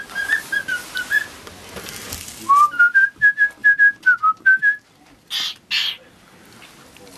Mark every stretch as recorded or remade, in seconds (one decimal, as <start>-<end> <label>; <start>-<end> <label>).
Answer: 0.0-7.2 recorded